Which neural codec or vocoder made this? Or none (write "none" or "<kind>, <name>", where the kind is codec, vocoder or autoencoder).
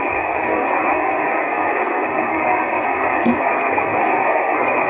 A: codec, SNAC